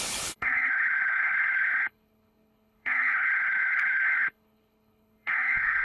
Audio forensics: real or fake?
fake